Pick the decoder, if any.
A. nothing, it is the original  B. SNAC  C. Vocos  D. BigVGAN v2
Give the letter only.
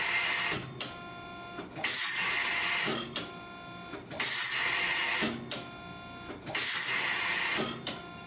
A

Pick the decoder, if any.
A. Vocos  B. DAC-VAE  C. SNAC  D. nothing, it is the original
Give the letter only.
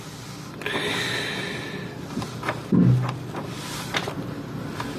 D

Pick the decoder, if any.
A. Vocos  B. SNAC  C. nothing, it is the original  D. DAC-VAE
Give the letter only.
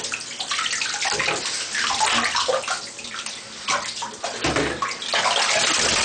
C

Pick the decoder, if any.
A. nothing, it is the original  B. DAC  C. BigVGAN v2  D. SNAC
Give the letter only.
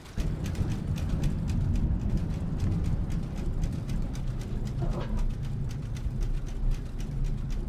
C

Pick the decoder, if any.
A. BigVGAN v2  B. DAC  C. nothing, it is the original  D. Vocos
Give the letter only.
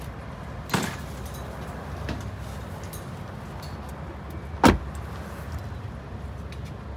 C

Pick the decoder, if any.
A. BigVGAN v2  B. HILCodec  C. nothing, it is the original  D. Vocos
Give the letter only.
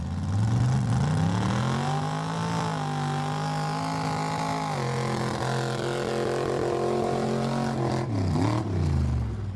C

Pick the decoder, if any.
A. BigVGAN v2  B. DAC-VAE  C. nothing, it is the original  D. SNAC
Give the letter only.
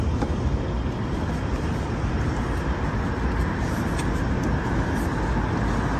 C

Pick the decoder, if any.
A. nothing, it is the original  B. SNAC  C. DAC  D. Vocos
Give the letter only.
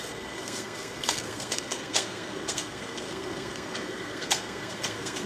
B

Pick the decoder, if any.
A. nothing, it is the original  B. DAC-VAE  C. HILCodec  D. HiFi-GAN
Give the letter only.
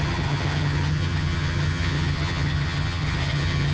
D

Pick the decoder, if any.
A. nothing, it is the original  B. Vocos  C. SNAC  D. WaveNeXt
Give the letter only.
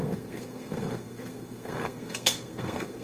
C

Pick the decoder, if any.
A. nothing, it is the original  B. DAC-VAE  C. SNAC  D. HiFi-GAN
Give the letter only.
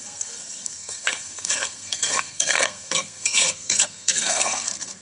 C